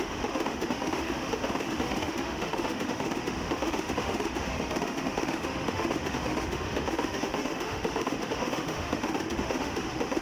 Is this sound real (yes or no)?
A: no